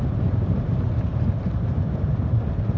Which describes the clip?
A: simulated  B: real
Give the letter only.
A